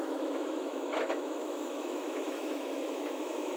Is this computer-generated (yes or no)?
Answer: yes